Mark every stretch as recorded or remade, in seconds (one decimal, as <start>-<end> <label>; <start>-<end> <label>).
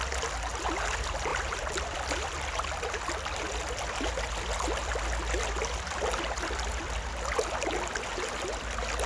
0.0-4.8 recorded; 4.8-6.9 remade; 6.9-9.1 recorded